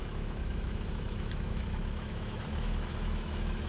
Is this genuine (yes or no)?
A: no